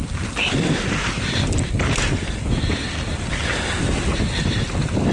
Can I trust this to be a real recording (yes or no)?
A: yes